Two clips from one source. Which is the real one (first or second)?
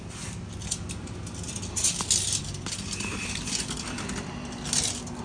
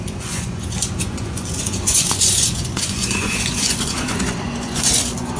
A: first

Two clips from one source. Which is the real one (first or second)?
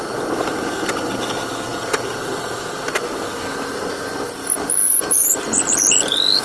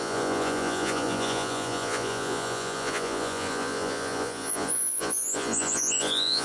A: first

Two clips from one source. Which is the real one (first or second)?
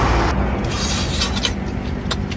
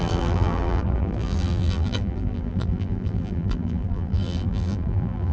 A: first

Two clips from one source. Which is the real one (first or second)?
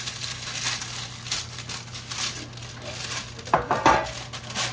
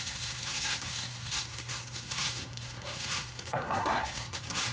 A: first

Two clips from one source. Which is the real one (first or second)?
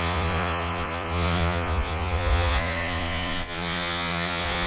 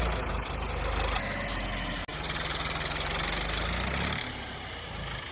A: second